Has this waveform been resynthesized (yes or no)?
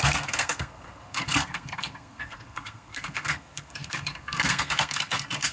yes